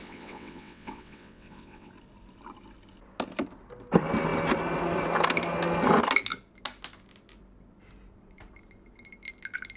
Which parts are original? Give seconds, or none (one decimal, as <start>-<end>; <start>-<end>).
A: 1.9-9.8